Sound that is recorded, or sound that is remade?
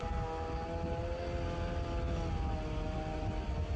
recorded